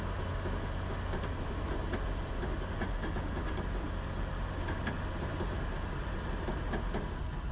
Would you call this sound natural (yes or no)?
yes